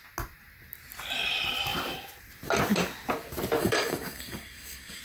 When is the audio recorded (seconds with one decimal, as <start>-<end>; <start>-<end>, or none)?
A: 0.0-3.6